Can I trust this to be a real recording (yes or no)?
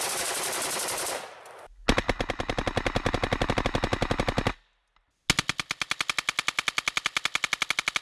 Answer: yes